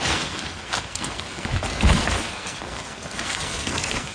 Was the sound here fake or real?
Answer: fake